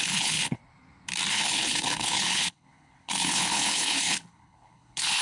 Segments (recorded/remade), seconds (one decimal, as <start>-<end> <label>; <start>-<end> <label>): 0.0-0.6 remade; 0.6-1.3 recorded; 1.3-5.2 remade